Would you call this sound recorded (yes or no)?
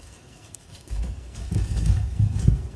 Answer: no